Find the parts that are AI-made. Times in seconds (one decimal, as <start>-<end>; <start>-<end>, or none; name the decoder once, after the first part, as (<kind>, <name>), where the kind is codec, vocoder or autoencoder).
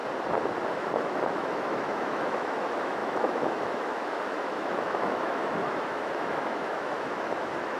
0.8-7.8 (autoencoder, DAC-VAE)